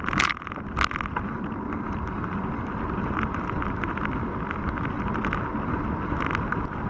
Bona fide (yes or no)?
yes